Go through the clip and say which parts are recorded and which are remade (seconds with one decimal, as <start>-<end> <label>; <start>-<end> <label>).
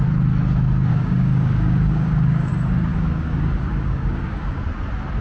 0.0-0.9 recorded; 0.9-2.5 remade; 2.5-2.9 recorded; 2.9-4.6 remade; 4.6-5.2 recorded